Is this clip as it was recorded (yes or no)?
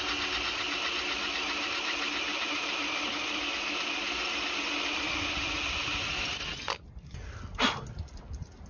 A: yes